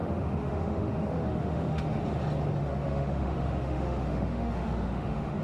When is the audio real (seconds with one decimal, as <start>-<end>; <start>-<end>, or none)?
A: 2.0-2.6